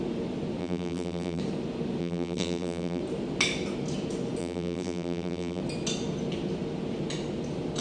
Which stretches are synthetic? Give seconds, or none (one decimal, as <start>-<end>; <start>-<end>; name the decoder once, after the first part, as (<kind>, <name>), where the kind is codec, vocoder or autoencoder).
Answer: 0.6-1.4 (vocoder, BigVGAN v2); 2.0-3.0; 4.4-5.6